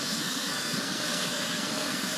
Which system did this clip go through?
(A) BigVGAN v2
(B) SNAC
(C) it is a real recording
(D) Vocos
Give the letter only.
B